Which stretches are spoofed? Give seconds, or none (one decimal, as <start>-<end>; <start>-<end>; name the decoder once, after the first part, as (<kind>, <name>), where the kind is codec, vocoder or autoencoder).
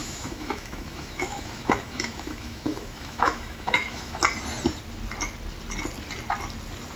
0.0-4.2 (autoencoder, DAC-VAE)